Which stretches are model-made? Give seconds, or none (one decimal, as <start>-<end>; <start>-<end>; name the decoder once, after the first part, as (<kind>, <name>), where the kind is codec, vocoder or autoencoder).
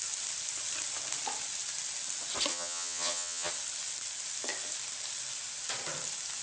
2.5-3.5 (vocoder, HiFi-GAN)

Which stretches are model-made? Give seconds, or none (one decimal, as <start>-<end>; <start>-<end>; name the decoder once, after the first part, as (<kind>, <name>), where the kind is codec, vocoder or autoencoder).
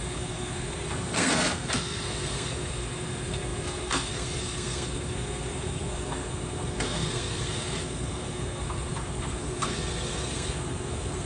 0.0-11.3 (codec, SNAC)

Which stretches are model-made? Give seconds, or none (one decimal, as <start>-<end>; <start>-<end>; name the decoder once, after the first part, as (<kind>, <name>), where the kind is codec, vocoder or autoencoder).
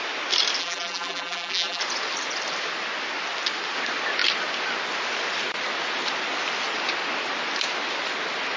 0.6-1.8 (vocoder, BigVGAN v2)